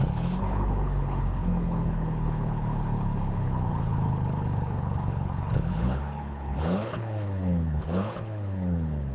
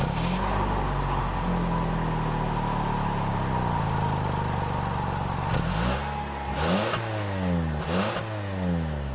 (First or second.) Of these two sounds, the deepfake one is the first